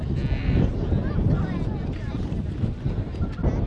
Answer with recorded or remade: recorded